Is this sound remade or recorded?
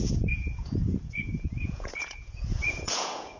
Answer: remade